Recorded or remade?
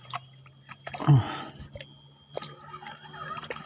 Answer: recorded